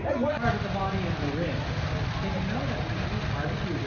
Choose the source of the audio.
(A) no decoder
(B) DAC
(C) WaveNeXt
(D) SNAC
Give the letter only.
A